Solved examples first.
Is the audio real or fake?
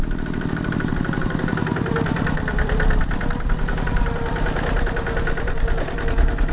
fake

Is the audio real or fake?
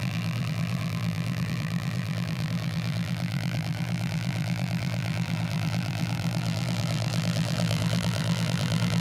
fake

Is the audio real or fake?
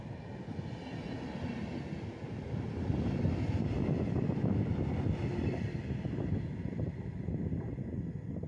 real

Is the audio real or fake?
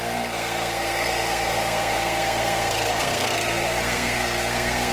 fake